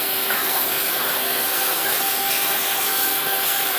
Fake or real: fake